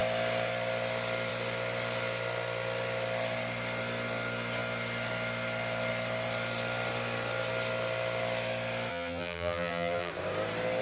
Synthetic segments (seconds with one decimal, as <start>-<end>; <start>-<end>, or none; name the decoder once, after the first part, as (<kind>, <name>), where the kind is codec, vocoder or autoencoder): 8.9-10.1 (vocoder, BigVGAN v2)